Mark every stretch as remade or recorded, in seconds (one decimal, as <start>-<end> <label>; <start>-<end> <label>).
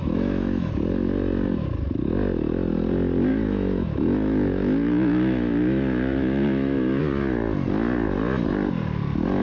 0.0-0.7 remade; 0.7-3.3 recorded; 3.3-7.0 remade; 7.0-9.4 recorded